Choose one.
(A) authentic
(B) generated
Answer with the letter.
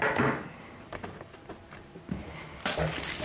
A